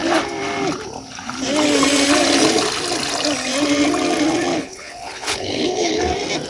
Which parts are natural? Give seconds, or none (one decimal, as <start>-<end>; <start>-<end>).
0.0-4.5; 6.0-6.5